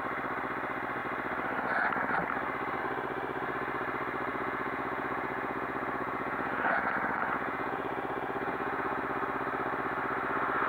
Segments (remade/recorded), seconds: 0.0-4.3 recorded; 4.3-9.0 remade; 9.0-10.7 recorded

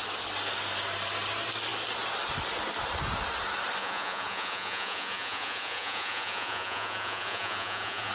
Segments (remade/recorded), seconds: 0.0-3.8 recorded; 3.8-8.1 remade

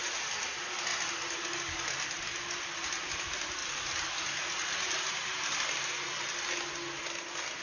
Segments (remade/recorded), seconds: 0.0-7.6 recorded

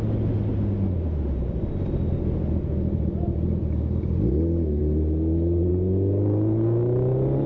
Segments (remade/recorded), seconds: 0.0-7.5 recorded

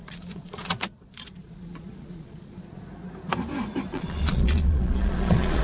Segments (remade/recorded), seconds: 0.0-2.8 remade; 2.8-3.9 recorded; 3.9-5.6 remade

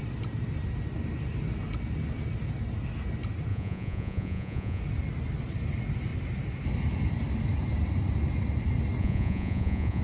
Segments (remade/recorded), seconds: 0.0-3.5 recorded; 3.5-4.8 remade; 4.8-9.0 recorded; 9.0-10.0 remade

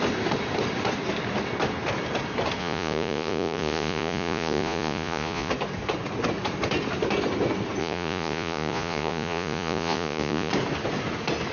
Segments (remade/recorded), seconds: 0.0-2.6 recorded; 2.6-5.5 remade; 5.5-7.8 recorded; 7.8-10.5 remade; 10.5-11.5 recorded